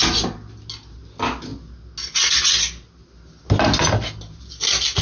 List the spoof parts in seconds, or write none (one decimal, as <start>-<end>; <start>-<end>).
none